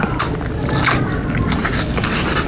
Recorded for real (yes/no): yes